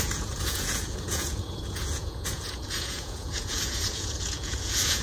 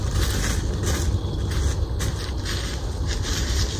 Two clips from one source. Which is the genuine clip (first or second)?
second